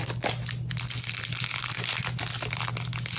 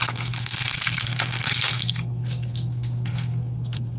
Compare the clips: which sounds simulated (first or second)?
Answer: second